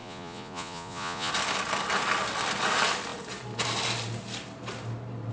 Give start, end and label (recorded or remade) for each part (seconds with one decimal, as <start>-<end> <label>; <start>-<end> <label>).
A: 0.0-1.3 remade; 1.3-5.3 recorded